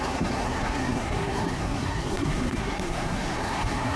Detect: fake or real fake